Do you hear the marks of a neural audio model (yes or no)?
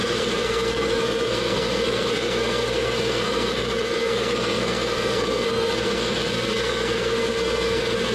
yes